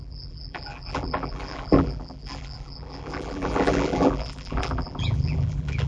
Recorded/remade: remade